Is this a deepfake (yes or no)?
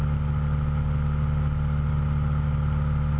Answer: no